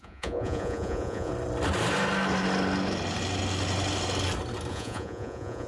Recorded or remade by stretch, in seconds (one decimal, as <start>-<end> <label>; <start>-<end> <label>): 0.0-1.3 remade; 1.3-4.7 recorded; 4.7-5.7 remade